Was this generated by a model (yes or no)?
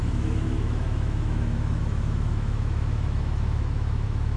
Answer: yes